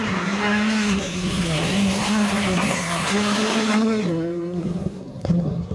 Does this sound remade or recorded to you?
remade